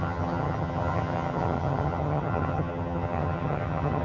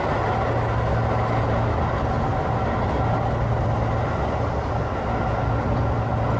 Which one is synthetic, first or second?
first